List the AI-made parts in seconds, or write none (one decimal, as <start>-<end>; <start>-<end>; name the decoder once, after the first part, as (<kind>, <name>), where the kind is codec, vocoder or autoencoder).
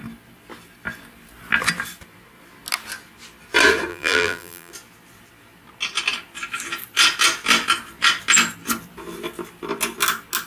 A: 3.9-4.7 (vocoder, BigVGAN v2)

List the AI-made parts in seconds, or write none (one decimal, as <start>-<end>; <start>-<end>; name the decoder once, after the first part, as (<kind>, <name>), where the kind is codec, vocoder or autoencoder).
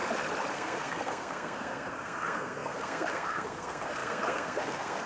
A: 0.5-5.1 (codec, SNAC)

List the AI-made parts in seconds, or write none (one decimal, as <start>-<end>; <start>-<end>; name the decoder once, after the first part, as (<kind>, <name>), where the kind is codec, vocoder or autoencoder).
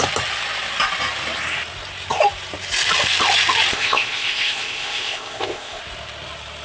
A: 3.7-5.8 (codec, ZipCodec)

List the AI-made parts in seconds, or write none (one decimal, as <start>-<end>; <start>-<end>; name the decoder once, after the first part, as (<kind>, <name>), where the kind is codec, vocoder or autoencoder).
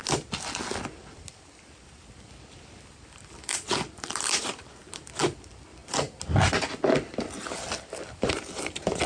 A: none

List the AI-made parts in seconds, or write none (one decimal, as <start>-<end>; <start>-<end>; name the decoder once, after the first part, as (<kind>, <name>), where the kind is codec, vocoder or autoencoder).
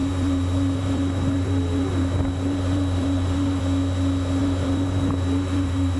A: 0.0-3.6 (vocoder, BigVGAN v2); 4.4-6.0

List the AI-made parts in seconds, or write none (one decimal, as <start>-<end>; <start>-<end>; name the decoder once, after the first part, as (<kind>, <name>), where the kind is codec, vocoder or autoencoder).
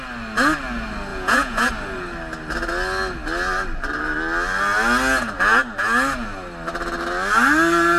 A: 1.1-1.7 (vocoder, Vocos)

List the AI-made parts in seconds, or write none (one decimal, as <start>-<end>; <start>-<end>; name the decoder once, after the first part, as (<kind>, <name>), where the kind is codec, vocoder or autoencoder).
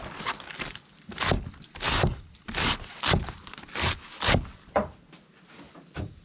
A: none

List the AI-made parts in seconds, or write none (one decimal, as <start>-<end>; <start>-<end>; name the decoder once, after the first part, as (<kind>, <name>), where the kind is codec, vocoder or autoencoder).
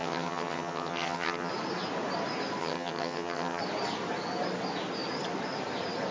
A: 0.0-1.5 (vocoder, HiFi-GAN); 2.6-3.6